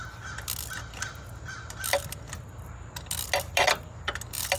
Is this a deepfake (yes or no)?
no